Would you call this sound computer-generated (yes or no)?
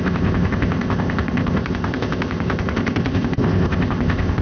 yes